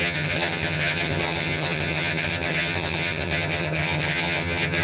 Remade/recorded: remade